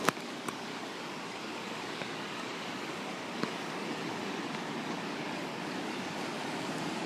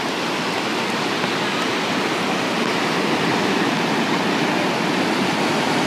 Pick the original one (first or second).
second